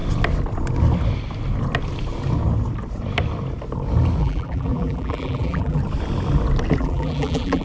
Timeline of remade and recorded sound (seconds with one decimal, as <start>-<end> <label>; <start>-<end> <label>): 0.0-4.2 recorded; 4.2-5.8 remade; 5.8-6.8 recorded; 6.8-7.6 remade